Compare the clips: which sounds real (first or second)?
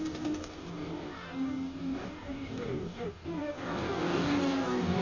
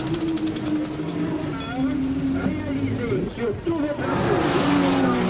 second